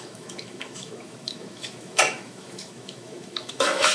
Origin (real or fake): fake